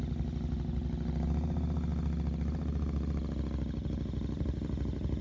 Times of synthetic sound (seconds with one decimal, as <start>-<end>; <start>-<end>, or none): none